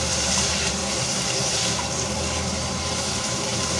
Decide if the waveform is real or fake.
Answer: fake